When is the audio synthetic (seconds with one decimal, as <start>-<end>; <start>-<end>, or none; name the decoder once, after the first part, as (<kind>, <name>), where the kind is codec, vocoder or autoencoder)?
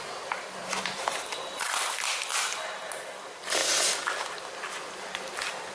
0.6-1.3 (vocoder, BigVGAN v2); 2.3-2.9